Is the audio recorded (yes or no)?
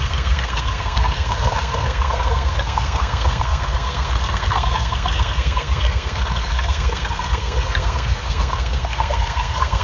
no